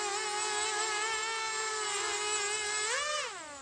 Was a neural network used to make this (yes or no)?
no